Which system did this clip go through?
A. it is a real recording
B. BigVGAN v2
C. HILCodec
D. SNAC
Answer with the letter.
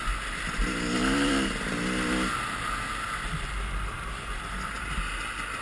A